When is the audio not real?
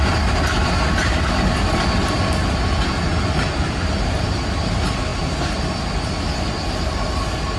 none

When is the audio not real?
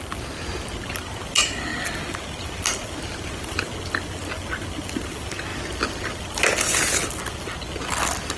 1.7-3.5; 5.5-6.4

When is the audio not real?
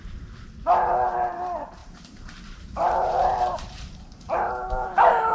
1.8-4.5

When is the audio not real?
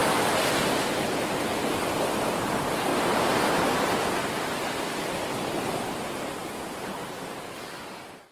2.9-4.1; 5.7-6.4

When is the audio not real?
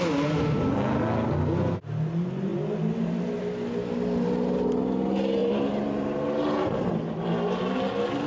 5.4-7.6